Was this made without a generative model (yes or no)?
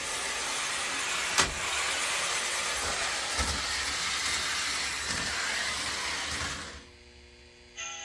yes